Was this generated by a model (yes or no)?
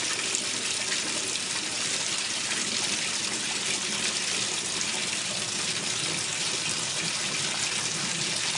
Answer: no